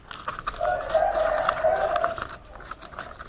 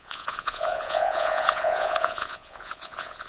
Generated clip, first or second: second